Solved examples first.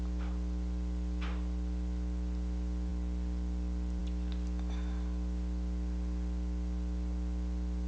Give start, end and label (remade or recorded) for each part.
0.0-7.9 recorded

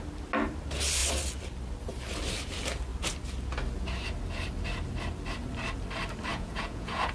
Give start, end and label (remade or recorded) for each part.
0.0-6.3 recorded; 6.3-7.1 remade

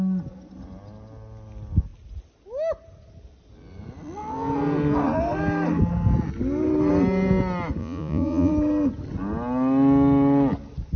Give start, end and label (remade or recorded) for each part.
0.0-7.8 recorded; 7.8-8.5 remade; 8.5-11.0 recorded

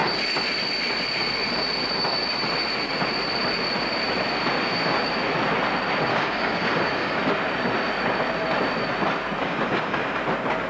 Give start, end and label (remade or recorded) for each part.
0.0-6.1 recorded; 6.1-7.2 remade; 7.2-9.4 recorded; 9.4-10.2 remade; 10.2-10.7 recorded

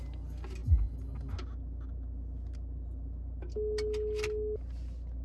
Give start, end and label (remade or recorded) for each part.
0.0-5.2 recorded

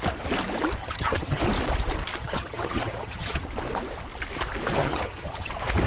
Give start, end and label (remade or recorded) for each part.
0.0-0.8 recorded; 0.8-1.4 remade; 1.4-2.2 recorded; 2.2-3.4 remade; 3.4-4.8 recorded; 4.8-5.5 remade; 5.5-5.9 recorded

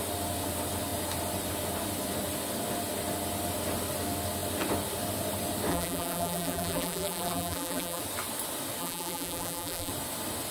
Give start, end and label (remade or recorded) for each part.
0.0-5.7 recorded; 5.7-8.0 remade; 8.0-8.8 recorded; 8.8-9.9 remade; 9.9-10.5 recorded

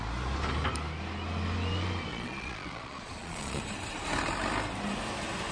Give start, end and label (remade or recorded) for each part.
0.0-2.1 recorded; 2.1-3.6 remade; 3.6-5.5 recorded